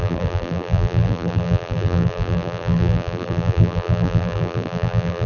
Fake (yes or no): yes